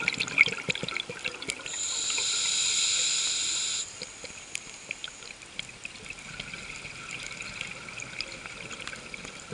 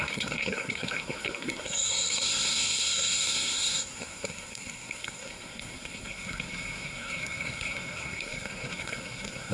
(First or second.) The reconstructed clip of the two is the second